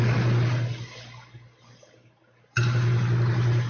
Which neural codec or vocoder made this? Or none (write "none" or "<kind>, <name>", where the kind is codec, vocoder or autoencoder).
none